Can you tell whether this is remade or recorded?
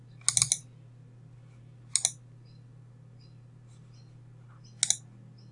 recorded